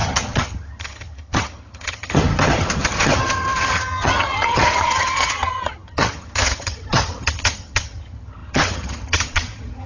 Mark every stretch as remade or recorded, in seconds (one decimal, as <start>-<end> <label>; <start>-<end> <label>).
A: 0.0-9.9 remade